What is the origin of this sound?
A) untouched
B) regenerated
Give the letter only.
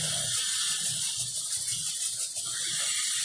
A